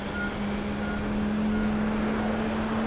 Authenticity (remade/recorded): recorded